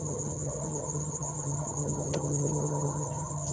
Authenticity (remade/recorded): remade